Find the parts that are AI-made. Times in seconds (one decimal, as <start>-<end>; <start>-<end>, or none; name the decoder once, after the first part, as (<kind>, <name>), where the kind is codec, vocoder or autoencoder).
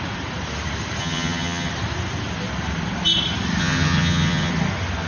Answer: 1.0-1.7 (vocoder, HiFi-GAN); 3.6-4.5